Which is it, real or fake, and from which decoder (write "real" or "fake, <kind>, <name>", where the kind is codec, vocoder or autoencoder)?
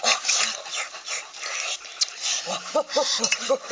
real